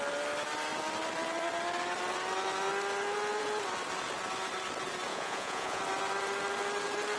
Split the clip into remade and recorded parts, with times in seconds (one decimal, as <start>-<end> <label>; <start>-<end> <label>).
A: 0.0-5.1 recorded; 5.1-5.8 remade; 5.8-7.2 recorded